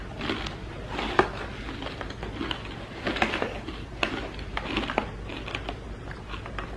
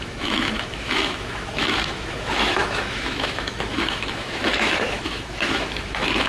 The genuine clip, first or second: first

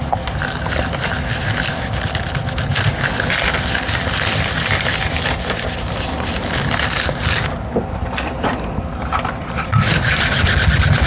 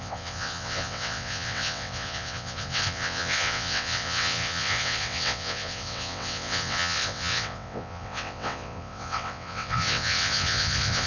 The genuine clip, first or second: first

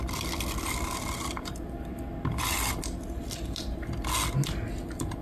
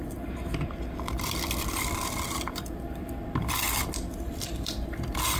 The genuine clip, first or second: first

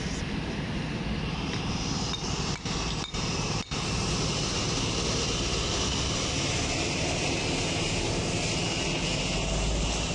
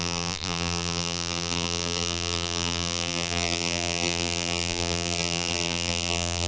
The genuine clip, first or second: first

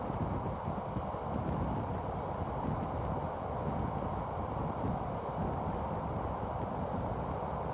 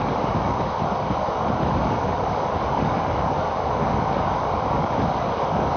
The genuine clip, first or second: first